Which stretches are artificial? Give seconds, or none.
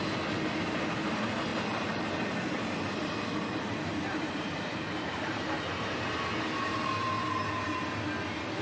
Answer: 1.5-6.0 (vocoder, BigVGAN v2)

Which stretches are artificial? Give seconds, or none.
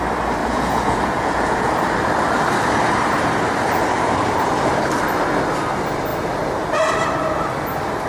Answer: 0.4-1.7 (vocoder, Vocos)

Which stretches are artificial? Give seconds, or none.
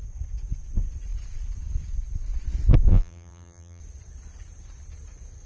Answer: 2.9-3.8 (vocoder, BigVGAN v2)